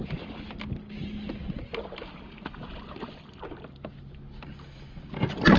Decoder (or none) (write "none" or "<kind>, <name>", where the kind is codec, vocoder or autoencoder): none